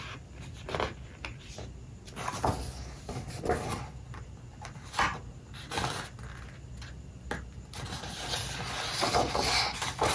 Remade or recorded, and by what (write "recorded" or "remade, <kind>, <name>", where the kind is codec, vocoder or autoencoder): recorded